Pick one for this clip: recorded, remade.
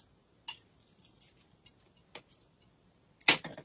recorded